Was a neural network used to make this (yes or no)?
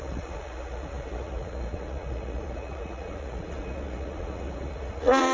yes